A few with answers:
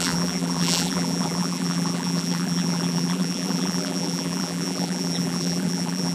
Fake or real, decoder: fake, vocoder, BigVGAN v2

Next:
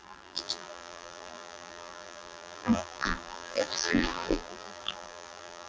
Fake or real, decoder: fake, vocoder, BigVGAN v2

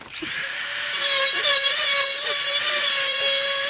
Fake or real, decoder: fake, vocoder, BigVGAN v2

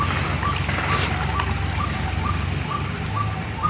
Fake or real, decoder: fake, vocoder, BigVGAN v2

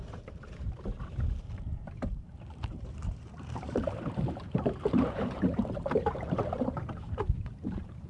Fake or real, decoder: fake, vocoder, BigVGAN v2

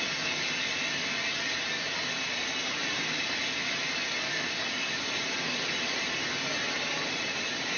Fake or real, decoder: real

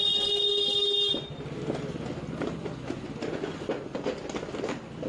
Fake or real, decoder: real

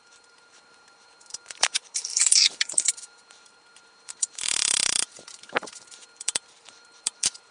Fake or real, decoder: fake, vocoder, BigVGAN v2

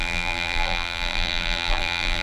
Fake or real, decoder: fake, vocoder, BigVGAN v2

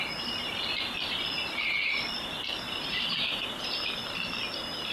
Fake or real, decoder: real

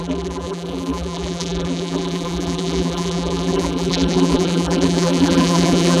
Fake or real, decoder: fake, vocoder, BigVGAN v2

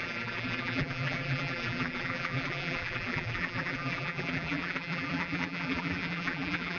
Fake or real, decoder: fake, vocoder, BigVGAN v2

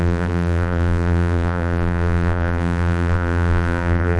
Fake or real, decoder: fake, vocoder, BigVGAN v2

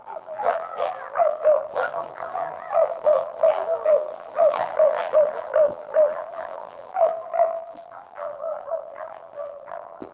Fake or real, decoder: fake, vocoder, BigVGAN v2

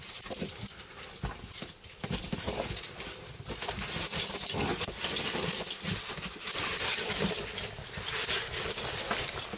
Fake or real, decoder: real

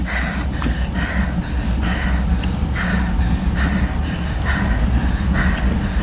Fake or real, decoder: real